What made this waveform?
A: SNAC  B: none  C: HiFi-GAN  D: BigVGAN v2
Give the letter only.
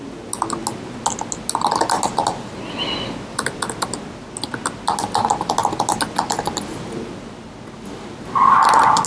B